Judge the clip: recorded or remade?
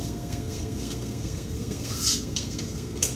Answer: remade